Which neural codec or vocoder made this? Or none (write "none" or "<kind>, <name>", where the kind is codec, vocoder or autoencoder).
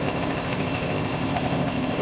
codec, ZipCodec